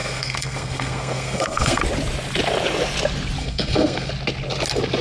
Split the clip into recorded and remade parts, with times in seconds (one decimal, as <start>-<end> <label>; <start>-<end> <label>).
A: 0.0-1.8 remade; 1.8-3.4 recorded; 3.4-4.1 remade; 4.1-5.0 recorded